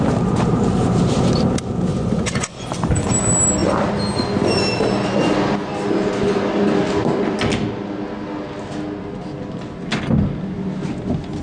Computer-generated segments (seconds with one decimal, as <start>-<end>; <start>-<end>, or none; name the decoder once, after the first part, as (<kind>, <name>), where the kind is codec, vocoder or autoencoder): 1.9-2.7 (vocoder, Vocos)